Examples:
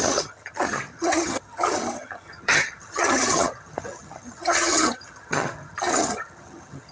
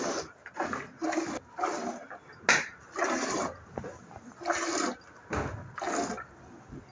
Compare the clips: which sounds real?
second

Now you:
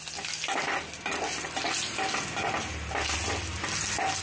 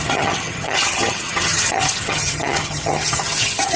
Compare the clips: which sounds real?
first